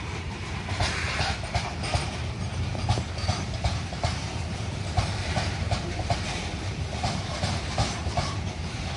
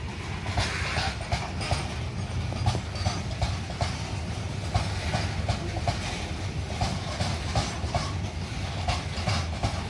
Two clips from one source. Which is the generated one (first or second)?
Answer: first